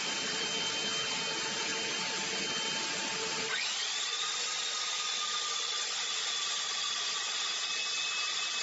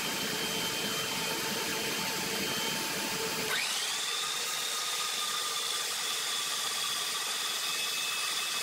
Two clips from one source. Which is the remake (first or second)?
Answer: second